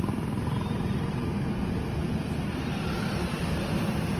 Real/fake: fake